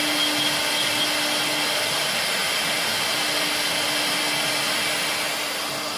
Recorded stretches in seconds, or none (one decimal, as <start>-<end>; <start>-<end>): 0.0-6.0